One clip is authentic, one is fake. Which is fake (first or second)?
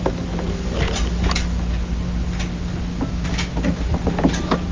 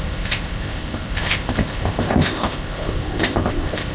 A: second